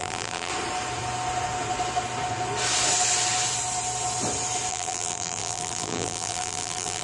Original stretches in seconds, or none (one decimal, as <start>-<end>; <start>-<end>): 0.5-4.7